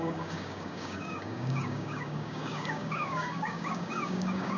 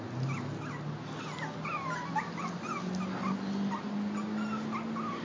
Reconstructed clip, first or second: first